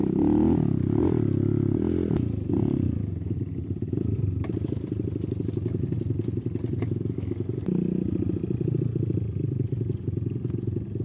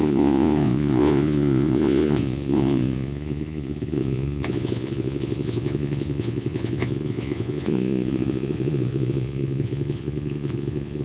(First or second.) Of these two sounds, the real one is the first